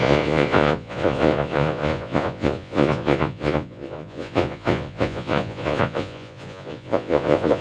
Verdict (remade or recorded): remade